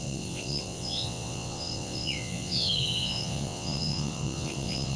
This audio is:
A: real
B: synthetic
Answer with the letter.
B